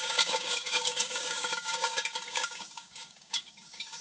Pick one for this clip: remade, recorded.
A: remade